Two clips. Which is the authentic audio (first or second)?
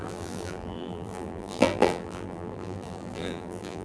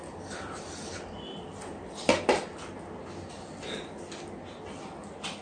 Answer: second